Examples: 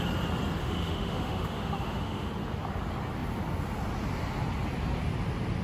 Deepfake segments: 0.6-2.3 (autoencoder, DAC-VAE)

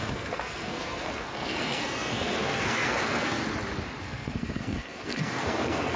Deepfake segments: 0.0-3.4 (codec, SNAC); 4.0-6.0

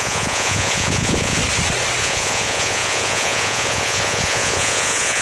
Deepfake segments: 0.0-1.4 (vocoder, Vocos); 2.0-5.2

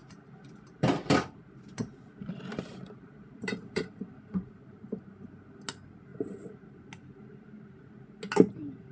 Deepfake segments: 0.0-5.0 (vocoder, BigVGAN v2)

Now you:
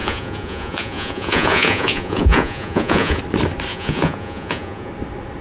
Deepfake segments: 0.0-3.2 (vocoder, Vocos); 3.7-4.9

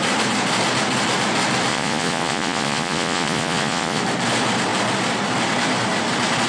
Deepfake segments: 1.7-4.0 (vocoder, Vocos)

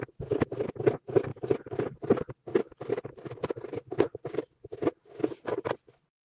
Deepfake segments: none

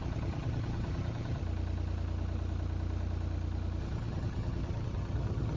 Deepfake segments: 0.0-1.4 (vocoder, HiFi-GAN); 3.8-5.6